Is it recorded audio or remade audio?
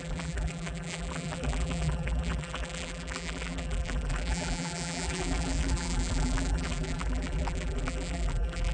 remade